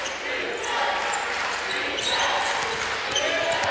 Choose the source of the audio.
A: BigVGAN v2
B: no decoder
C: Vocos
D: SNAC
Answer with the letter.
B